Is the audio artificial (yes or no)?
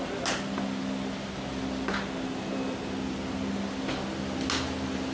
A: no